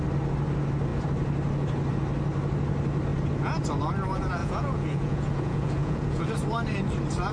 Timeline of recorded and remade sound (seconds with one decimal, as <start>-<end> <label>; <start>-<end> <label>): 0.0-4.4 recorded; 4.4-6.3 remade; 6.3-7.3 recorded